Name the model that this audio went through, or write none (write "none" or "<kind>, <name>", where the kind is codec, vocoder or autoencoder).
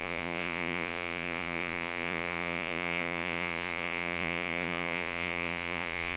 vocoder, Vocos